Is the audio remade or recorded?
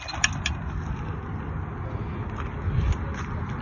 recorded